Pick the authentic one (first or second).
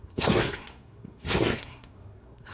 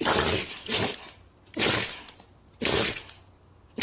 second